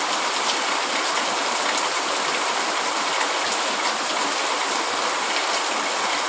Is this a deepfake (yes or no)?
no